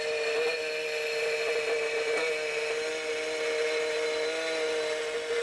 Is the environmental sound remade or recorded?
recorded